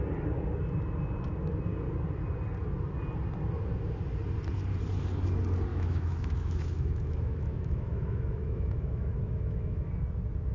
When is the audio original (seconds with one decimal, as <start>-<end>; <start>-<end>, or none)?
0.0-5.7; 9.9-10.5